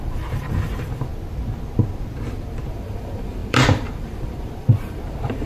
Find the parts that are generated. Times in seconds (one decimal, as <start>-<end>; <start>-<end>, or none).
0.0-1.1; 2.7-5.5